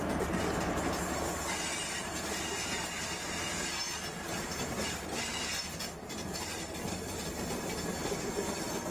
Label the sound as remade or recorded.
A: recorded